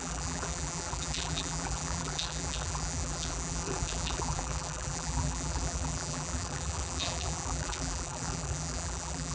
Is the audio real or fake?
fake